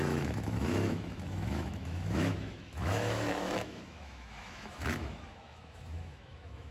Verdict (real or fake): fake